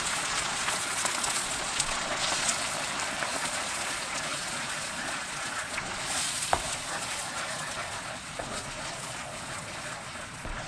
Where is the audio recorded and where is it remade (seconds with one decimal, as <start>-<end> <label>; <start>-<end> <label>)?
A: 0.0-2.5 remade; 2.5-3.3 recorded; 3.3-10.7 remade

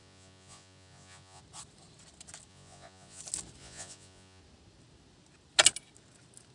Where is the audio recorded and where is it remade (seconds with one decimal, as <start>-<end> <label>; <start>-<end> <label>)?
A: 0.0-1.4 remade; 1.4-2.5 recorded; 2.5-3.2 remade; 3.2-3.6 recorded; 3.6-4.4 remade; 4.4-6.5 recorded

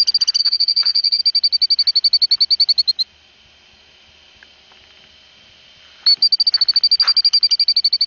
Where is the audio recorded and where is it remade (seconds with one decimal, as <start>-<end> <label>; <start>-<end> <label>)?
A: 0.0-0.4 recorded; 0.4-1.2 remade; 1.2-8.1 recorded

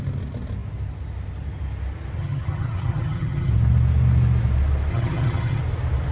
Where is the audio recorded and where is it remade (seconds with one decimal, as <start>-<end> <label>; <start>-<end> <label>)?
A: 0.0-2.2 recorded; 2.2-3.5 remade; 3.5-4.9 recorded; 4.9-5.6 remade; 5.6-6.1 recorded

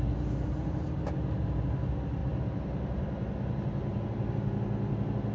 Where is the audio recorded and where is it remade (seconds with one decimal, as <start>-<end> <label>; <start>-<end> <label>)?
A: 0.0-5.3 recorded

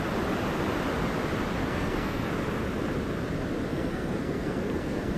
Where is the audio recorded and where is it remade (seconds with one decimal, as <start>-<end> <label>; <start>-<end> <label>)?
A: 0.0-1.6 recorded; 1.6-2.3 remade; 2.3-3.7 recorded; 3.7-5.2 remade

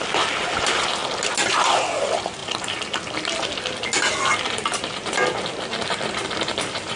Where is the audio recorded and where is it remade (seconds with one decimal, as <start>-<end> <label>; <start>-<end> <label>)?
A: 0.0-7.0 recorded